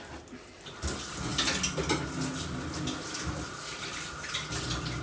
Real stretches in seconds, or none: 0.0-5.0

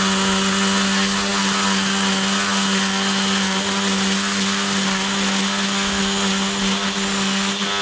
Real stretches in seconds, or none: 0.0-7.8

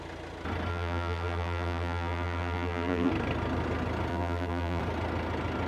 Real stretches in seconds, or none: 0.0-0.7; 3.1-4.1; 4.8-5.7

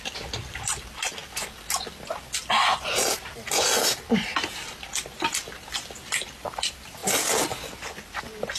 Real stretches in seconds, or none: 1.2-1.8; 7.0-8.2

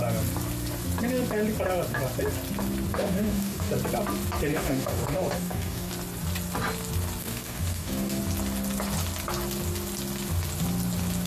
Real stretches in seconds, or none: 0.0-2.9; 3.7-4.5; 5.9-7.2; 8.2-11.3

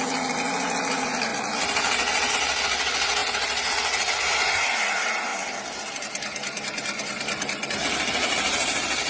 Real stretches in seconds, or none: 0.0-9.1